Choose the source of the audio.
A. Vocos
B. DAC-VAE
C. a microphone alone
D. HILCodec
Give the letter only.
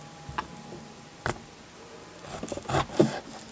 C